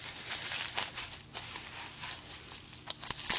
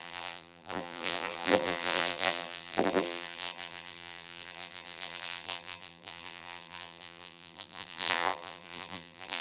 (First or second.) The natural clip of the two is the first